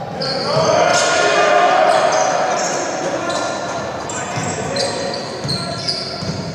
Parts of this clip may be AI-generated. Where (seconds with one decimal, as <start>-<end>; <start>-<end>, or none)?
none